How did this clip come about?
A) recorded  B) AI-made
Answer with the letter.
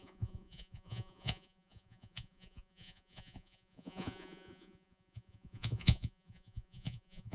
B